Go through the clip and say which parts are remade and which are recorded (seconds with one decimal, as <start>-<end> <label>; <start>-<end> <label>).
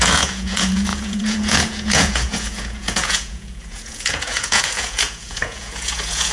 0.0-6.3 remade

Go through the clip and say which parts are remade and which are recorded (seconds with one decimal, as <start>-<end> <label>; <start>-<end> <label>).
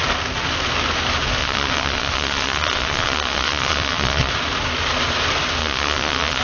0.0-1.4 recorded; 1.4-4.3 remade; 4.3-5.6 recorded; 5.6-6.4 remade